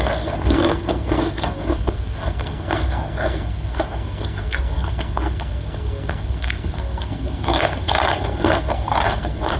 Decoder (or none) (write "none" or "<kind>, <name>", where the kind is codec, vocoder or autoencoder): codec, SNAC